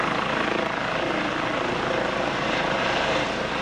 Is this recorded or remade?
recorded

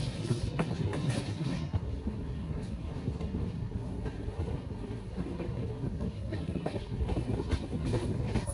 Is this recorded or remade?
remade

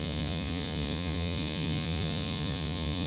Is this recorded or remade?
remade